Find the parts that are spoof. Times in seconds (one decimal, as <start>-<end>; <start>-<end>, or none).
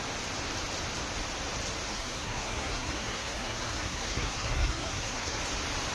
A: 1.9-5.4